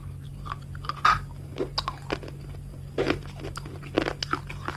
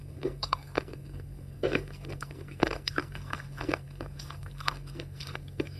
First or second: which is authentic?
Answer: first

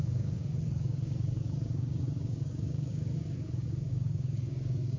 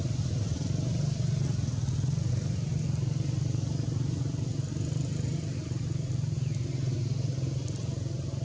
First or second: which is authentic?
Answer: second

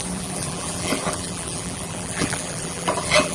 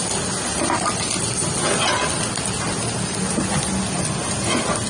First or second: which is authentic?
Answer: second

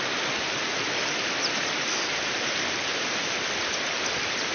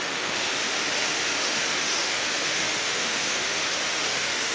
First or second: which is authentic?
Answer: first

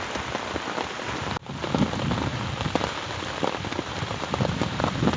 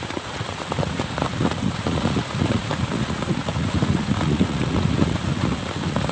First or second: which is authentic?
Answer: first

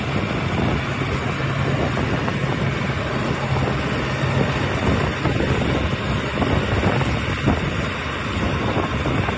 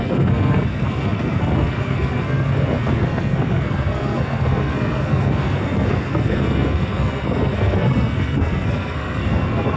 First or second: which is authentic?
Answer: first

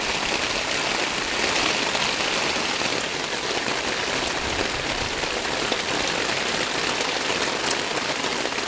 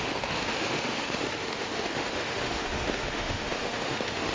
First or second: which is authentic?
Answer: first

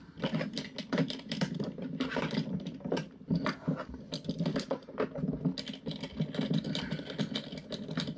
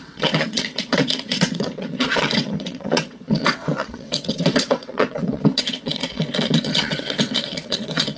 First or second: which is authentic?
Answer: first